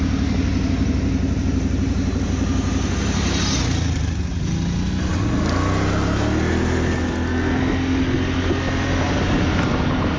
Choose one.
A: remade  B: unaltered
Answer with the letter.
B